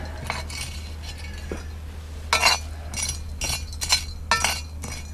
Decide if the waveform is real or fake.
real